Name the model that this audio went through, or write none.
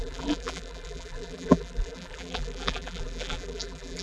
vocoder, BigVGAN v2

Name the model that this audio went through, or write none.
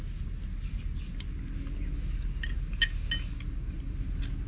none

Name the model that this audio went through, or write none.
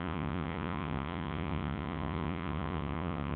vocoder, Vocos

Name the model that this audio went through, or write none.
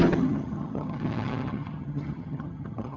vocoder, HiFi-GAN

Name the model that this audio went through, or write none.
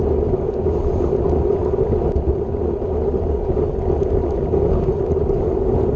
none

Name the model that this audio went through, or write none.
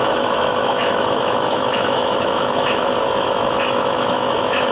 autoencoder, DAC-VAE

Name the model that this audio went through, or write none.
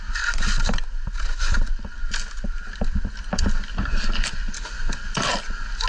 none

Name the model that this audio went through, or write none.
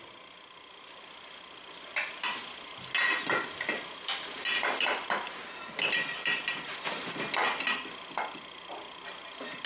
none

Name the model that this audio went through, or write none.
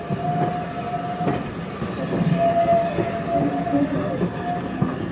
none